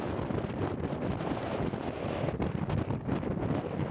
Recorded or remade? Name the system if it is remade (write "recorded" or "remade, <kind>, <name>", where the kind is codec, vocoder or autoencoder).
recorded